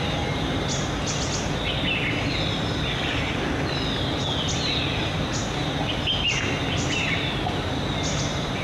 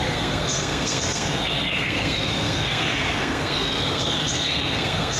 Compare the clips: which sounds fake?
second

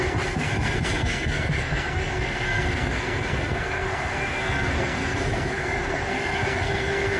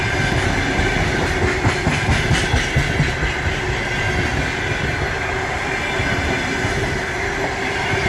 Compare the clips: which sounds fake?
first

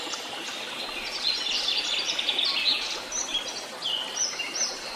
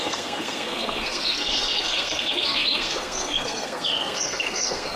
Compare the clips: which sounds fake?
second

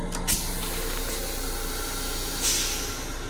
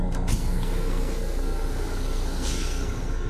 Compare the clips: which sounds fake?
second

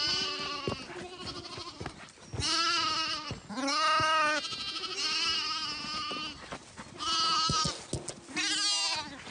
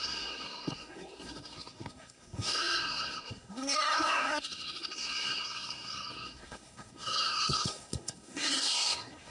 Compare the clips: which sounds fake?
second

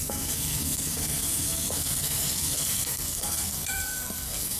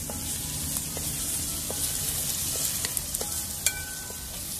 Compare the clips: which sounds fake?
first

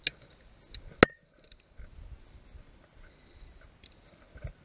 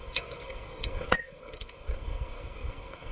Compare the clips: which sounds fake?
second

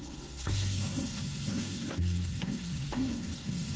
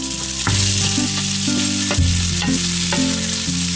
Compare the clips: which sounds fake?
first